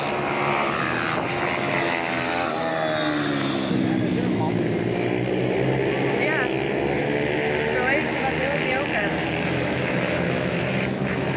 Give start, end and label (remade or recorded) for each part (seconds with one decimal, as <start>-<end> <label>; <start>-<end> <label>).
0.0-4.1 recorded; 4.1-4.6 remade; 4.6-9.2 recorded; 9.2-11.4 remade